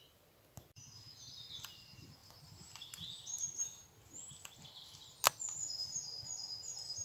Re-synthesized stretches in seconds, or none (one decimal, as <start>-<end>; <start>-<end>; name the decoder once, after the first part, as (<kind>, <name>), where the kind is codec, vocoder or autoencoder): none